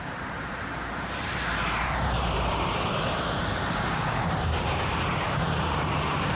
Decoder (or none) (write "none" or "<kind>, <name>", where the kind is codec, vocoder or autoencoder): vocoder, BigVGAN v2